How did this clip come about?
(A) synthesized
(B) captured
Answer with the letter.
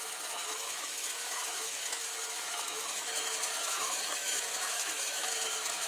A